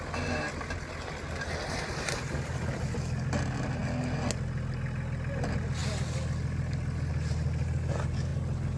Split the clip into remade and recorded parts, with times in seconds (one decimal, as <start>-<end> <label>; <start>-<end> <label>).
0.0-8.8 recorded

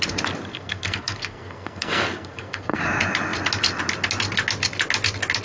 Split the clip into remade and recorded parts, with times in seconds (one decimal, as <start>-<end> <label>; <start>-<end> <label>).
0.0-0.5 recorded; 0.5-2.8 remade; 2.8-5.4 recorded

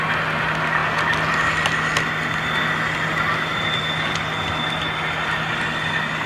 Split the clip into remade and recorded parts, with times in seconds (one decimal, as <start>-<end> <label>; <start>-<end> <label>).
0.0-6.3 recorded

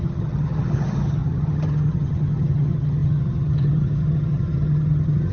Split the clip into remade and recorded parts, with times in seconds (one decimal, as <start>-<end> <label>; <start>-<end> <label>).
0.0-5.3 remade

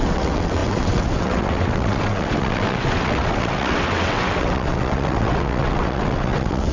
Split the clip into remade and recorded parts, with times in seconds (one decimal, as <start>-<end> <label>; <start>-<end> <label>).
0.0-6.7 remade

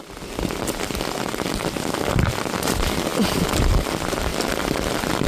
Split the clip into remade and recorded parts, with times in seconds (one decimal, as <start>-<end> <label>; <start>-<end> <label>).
0.0-4.3 recorded; 4.3-5.3 remade

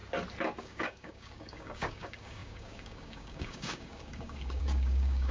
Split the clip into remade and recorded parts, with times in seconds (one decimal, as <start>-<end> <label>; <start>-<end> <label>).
0.0-0.6 recorded; 0.6-5.3 remade

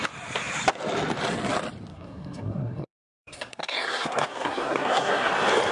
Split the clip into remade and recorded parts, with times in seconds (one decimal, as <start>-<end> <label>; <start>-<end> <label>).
0.0-1.9 recorded; 1.9-5.3 remade; 5.3-5.7 recorded